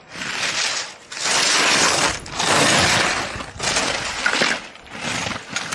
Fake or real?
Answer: real